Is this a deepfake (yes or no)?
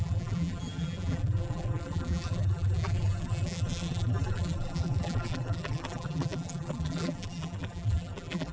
yes